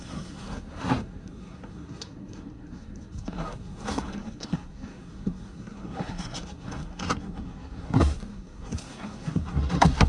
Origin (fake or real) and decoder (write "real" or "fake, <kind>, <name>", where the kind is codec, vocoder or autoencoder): fake, codec, SNAC